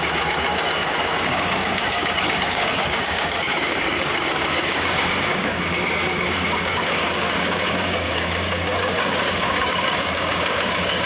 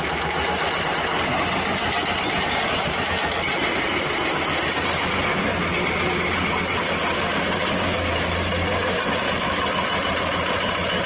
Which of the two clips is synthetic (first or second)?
first